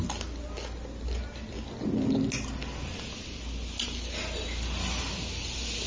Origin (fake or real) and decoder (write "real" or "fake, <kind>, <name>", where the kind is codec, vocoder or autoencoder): real